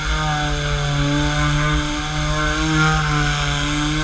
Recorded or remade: recorded